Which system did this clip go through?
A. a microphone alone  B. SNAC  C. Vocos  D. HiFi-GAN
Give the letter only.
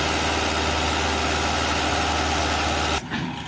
A